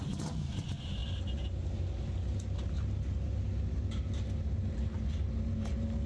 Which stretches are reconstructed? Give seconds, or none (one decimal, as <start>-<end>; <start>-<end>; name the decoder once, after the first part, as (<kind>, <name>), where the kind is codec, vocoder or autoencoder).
none